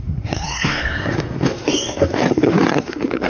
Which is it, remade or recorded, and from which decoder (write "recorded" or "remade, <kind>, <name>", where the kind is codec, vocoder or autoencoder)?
remade, codec, SNAC